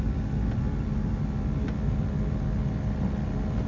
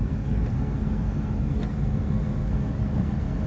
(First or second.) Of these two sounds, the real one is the first